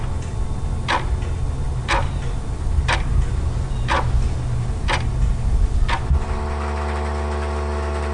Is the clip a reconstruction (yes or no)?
no